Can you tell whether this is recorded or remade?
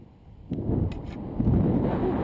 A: recorded